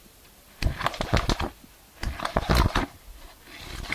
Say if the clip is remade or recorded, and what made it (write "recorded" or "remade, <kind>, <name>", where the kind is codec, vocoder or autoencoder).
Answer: recorded